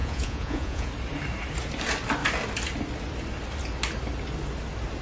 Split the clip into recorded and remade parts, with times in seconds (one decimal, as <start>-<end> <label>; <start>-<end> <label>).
0.0-0.9 remade; 0.9-5.0 recorded